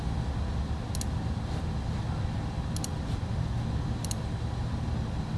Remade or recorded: recorded